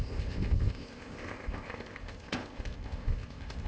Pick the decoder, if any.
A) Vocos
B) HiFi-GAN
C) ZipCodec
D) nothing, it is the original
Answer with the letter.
C